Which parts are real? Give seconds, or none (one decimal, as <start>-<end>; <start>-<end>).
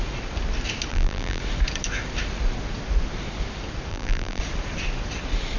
0.0-0.9; 1.4-3.9; 4.4-5.6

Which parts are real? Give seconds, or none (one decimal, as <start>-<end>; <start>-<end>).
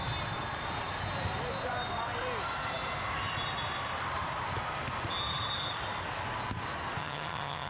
0.0-7.0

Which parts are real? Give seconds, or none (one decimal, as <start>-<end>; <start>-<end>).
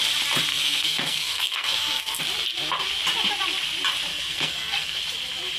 0.0-0.5; 2.2-4.1; 5.0-5.6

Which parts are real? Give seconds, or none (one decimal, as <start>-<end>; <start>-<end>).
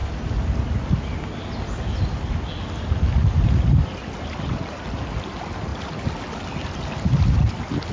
0.0-7.9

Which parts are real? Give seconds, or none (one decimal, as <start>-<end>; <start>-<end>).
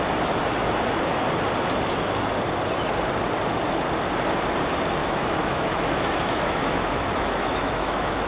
0.0-5.0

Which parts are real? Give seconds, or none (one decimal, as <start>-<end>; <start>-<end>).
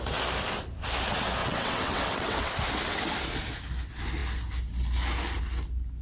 0.0-1.4; 2.5-6.0